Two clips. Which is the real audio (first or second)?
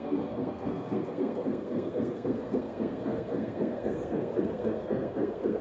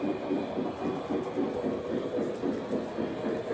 second